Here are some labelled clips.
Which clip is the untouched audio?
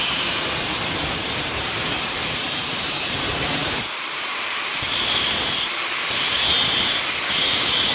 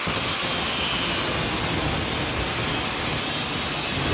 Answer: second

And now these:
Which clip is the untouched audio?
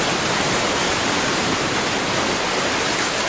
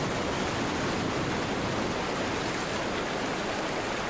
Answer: second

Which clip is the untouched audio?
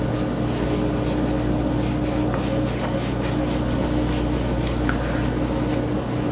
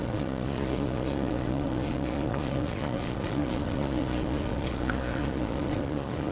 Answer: first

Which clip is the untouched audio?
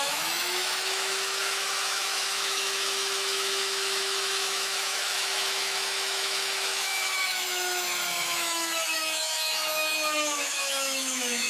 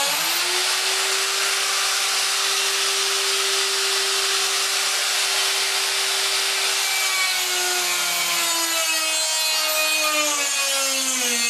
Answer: second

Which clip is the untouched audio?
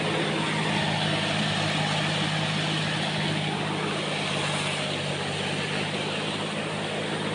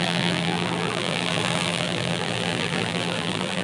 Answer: first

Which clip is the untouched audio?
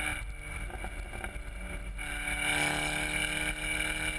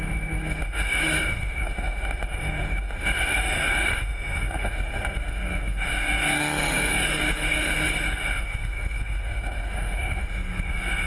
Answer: first